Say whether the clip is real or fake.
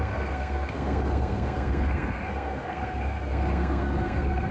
fake